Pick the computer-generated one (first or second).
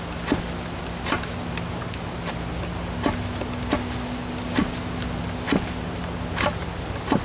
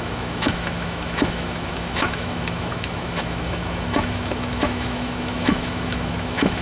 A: second